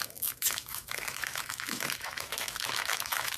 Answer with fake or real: fake